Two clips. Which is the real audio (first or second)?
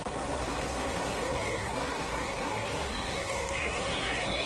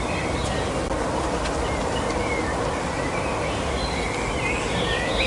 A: second